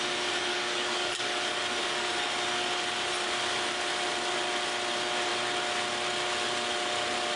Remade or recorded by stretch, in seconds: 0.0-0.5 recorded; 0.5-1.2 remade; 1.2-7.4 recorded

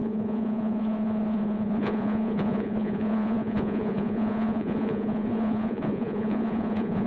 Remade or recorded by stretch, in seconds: 0.0-7.1 remade

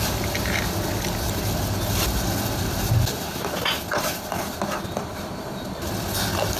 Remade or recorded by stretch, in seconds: 0.0-5.1 recorded; 5.1-5.9 remade; 5.9-6.6 recorded

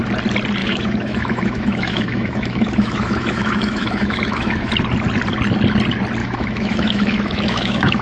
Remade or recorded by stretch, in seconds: 0.0-0.6 recorded; 0.6-4.7 remade; 4.7-6.2 recorded; 6.2-8.0 remade

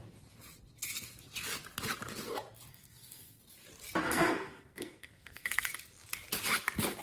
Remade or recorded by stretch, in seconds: 0.0-2.7 recorded; 2.7-3.4 remade; 3.4-4.0 recorded; 4.0-5.7 remade; 5.7-7.0 recorded

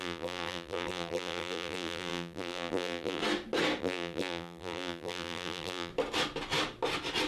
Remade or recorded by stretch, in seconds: 0.0-3.2 remade; 3.2-3.8 recorded; 3.8-5.9 remade; 5.9-7.3 recorded

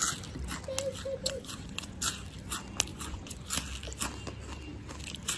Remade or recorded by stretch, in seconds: 0.0-1.2 recorded; 1.2-2.0 remade; 2.0-2.9 recorded; 2.9-3.5 remade; 3.5-5.4 recorded